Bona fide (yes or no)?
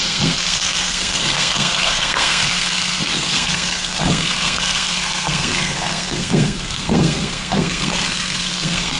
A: no